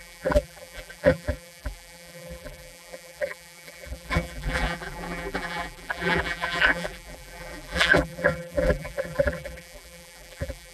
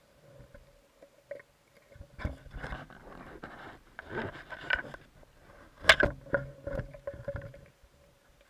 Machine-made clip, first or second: first